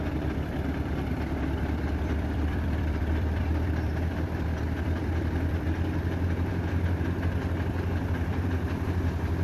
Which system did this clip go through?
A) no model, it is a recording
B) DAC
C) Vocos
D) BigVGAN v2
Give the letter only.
D